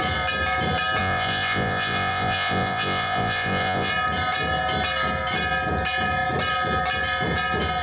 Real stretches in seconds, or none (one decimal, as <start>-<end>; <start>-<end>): 0.0-1.0; 3.9-7.8